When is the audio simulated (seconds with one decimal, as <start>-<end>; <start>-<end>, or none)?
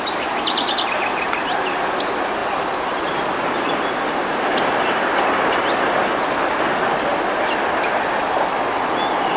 none